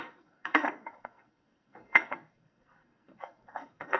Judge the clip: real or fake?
fake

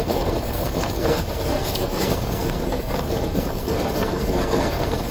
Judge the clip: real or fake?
fake